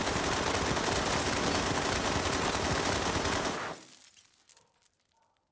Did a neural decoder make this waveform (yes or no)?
no